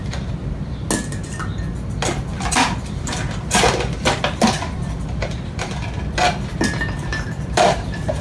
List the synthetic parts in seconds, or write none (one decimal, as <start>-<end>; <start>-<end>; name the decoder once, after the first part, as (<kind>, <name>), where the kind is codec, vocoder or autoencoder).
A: 2.3-5.8 (vocoder, BigVGAN v2); 7.1-8.2